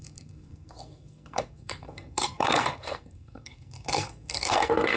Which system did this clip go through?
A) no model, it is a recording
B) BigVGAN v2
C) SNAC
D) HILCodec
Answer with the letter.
C